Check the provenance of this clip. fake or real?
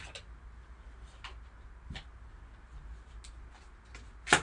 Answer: real